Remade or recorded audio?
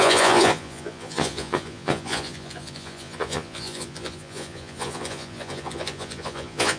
remade